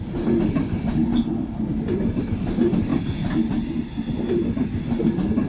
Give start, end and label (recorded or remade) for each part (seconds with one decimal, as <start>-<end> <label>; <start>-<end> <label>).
0.0-5.5 recorded